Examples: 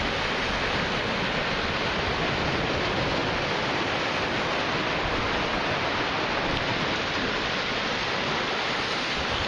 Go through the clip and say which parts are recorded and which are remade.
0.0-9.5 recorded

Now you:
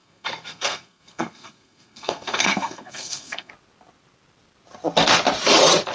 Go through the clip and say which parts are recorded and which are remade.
0.0-3.5 remade; 3.5-5.9 recorded

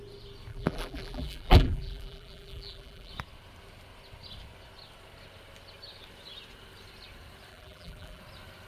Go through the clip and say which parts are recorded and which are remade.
0.0-0.5 recorded; 0.5-3.1 remade; 3.1-7.5 recorded; 7.5-8.2 remade; 8.2-8.7 recorded

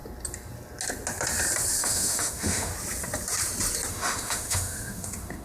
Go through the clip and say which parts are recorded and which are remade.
0.0-1.8 recorded; 1.8-2.7 remade; 2.7-3.9 recorded; 3.9-5.4 remade